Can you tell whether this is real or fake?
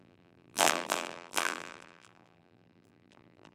fake